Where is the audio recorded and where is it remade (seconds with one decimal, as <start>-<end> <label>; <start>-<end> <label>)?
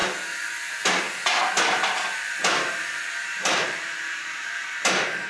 0.0-2.4 recorded; 2.4-4.7 remade; 4.7-5.3 recorded